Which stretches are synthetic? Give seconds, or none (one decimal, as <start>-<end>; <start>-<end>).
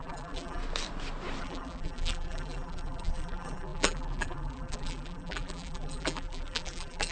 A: 0.0-0.6; 1.4-7.1